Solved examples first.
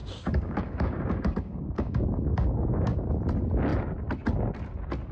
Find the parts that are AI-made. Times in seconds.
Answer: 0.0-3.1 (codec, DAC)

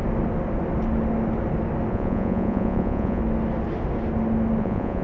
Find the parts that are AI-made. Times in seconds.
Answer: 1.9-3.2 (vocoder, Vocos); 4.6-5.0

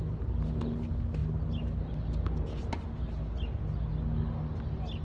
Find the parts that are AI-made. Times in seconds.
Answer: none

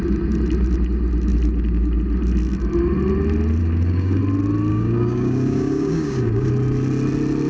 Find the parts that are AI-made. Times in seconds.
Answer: 3.6-4.2 (codec, DAC); 4.7-6.5

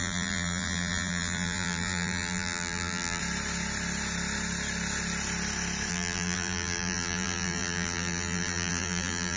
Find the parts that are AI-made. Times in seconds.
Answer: 0.0-3.2 (vocoder, BigVGAN v2); 5.9-9.4

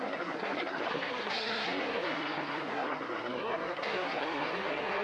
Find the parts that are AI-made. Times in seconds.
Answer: 0.0-5.0 (codec, SNAC)

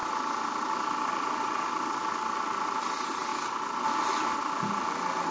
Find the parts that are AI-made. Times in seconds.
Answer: none

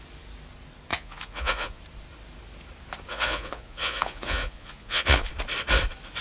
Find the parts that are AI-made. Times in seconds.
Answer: 0.9-1.8 (vocoder, Vocos); 3.1-5.3